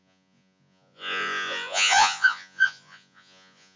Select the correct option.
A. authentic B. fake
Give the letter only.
B